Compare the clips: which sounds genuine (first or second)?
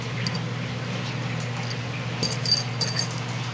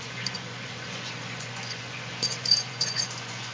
first